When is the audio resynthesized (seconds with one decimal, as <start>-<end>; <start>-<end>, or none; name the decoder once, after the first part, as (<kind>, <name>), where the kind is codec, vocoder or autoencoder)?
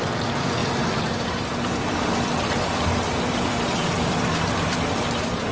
0.0-5.5 (vocoder, BigVGAN v2)